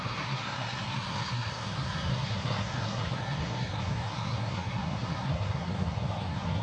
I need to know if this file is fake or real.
fake